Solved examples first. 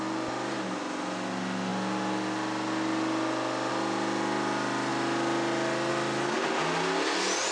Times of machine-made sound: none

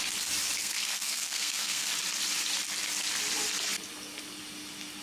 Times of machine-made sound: 0.6-1.9 (codec, SNAC)

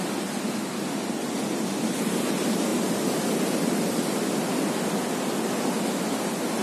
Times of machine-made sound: none